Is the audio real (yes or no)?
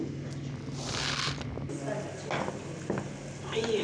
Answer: yes